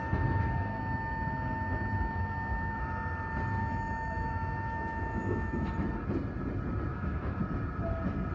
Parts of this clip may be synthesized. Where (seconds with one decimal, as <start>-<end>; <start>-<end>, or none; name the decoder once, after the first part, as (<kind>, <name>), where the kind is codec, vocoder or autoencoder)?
0.7-2.8 (autoencoder, DAC-VAE); 3.6-5.7; 6.9-7.4